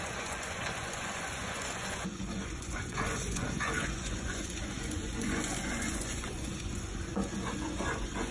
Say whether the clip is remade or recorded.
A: remade